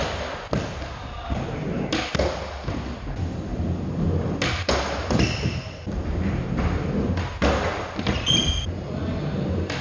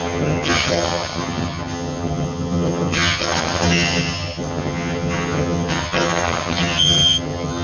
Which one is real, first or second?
first